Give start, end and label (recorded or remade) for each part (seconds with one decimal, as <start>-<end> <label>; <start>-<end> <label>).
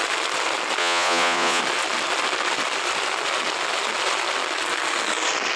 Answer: 0.0-0.8 recorded; 0.8-1.6 remade; 1.6-5.6 recorded